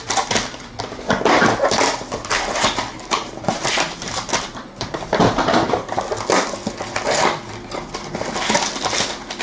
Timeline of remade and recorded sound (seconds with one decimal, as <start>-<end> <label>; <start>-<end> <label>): 0.0-3.2 recorded; 3.2-6.0 remade; 6.0-9.4 recorded